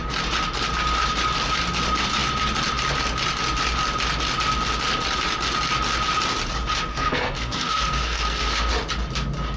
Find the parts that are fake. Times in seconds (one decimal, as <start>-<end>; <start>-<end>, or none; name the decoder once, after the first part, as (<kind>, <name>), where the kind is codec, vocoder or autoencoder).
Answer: 6.9-8.7 (codec, SNAC)